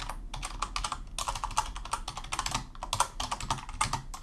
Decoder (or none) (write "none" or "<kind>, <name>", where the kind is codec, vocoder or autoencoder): none